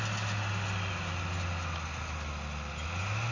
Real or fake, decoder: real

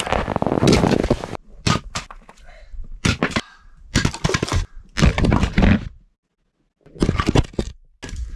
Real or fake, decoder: real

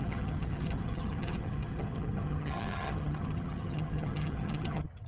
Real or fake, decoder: fake, vocoder, HiFi-GAN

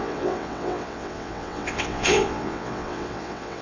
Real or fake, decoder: fake, vocoder, WaveNeXt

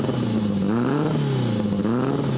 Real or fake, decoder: real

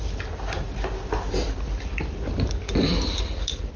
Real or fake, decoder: real